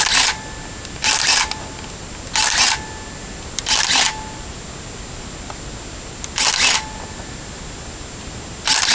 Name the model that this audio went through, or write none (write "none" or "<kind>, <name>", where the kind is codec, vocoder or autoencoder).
none